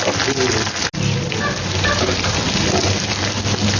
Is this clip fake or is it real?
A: real